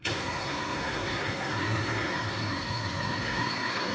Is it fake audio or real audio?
fake